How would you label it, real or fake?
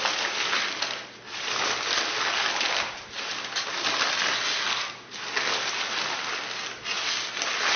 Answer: real